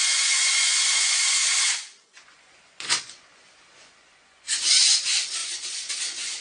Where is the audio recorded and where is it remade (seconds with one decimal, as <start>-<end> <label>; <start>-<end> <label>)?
0.0-6.4 remade